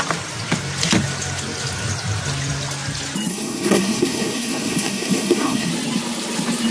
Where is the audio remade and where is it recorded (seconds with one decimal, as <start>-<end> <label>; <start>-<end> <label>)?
0.0-3.3 recorded; 3.3-5.7 remade; 5.7-6.7 recorded